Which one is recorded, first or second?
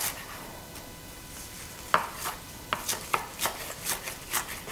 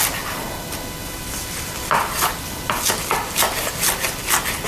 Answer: second